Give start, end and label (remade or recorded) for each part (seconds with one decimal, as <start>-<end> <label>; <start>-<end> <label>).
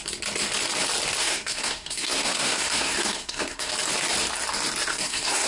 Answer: 0.0-1.2 recorded; 1.2-3.7 remade; 3.7-4.9 recorded; 4.9-5.5 remade